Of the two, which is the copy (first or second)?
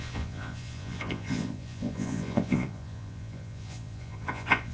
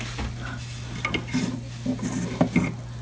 first